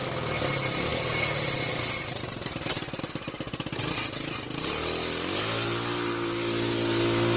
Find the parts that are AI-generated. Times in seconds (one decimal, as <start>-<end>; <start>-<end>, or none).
none

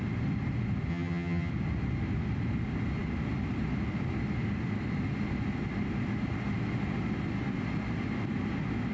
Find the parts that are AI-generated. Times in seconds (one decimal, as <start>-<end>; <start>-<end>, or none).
0.9-1.5